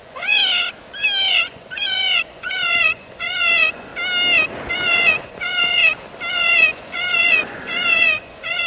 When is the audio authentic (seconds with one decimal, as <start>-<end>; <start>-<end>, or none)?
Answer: 0.4-1.3; 3.9-4.7; 5.8-6.3